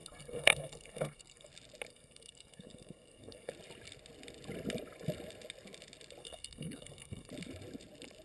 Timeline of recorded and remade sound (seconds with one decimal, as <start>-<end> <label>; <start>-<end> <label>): 0.0-1.5 remade; 1.5-1.9 recorded; 1.9-3.5 remade; 3.5-6.2 recorded; 6.2-7.3 remade; 7.3-8.2 recorded